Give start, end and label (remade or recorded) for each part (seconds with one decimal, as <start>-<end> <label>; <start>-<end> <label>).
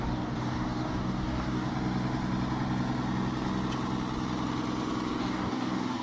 0.0-1.7 remade; 1.7-5.2 recorded; 5.2-6.0 remade